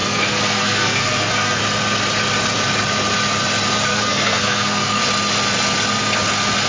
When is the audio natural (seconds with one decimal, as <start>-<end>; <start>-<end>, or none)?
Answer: 1.6-3.9; 5.0-6.7